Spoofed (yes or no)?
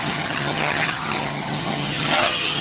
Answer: yes